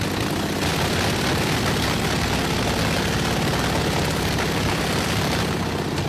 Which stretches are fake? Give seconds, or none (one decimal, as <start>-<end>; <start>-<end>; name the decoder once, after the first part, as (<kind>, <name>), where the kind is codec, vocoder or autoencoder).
none